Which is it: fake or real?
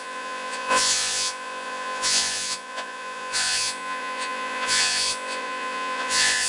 fake